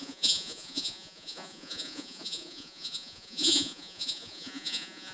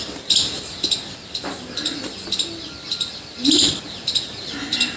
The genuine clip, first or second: second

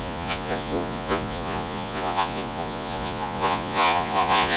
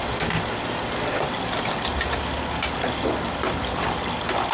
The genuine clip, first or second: second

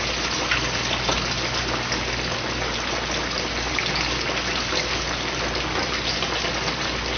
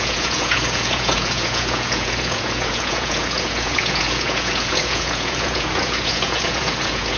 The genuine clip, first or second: first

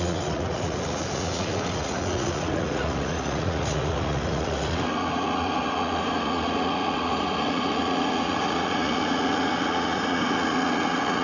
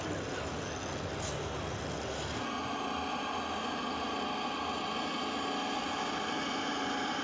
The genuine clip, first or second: second